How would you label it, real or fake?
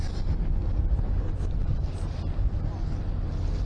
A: real